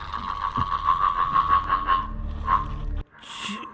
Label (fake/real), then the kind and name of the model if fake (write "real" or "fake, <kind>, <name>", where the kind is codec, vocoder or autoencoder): real